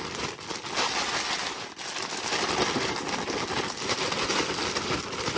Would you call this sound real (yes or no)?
yes